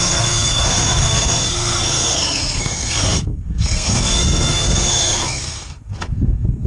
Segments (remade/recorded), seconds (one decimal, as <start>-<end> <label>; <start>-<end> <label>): 0.0-6.7 remade